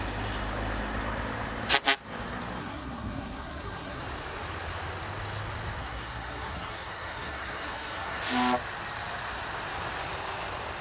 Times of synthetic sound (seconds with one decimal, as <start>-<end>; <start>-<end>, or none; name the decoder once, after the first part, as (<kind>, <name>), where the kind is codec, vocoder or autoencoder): 2.6-4.0 (codec, SNAC); 5.8-8.2